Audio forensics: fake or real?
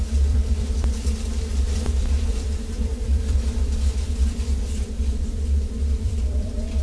fake